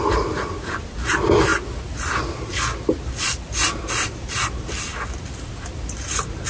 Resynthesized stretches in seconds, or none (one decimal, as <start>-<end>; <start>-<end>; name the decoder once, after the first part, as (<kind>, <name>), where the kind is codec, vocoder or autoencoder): 0.0-1.5 (vocoder, BigVGAN v2); 3.1-4.9; 5.5-6.5